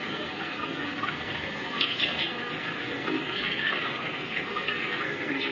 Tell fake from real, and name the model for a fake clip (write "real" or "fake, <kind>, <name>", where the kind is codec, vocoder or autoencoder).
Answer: fake, codec, SNAC